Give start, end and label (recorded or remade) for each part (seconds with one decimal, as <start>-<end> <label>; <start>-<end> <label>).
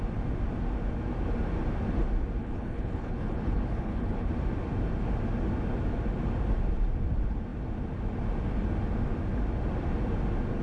0.0-2.4 recorded; 2.4-4.3 remade; 4.3-10.6 recorded